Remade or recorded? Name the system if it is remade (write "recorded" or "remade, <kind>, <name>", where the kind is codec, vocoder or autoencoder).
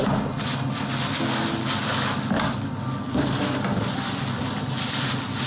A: recorded